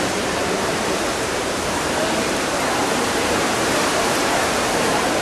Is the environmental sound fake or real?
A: fake